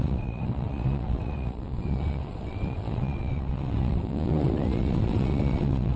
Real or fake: fake